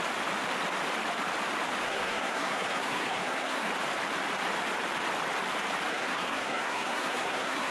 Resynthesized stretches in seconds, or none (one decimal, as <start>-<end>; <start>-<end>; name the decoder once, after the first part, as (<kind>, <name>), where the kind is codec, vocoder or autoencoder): 1.8-3.7 (codec, SNAC); 5.9-7.7